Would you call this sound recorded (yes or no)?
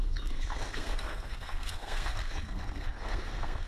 no